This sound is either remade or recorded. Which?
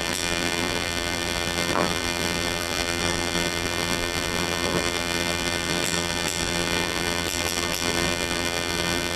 remade